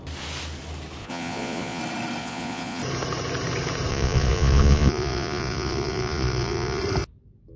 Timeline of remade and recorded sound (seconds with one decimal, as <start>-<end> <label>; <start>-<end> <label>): 0.0-1.0 recorded; 1.0-1.8 remade; 1.8-2.2 recorded; 2.2-2.8 remade; 2.8-3.9 recorded; 3.9-6.8 remade; 6.8-7.6 recorded